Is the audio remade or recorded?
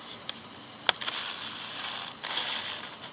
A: recorded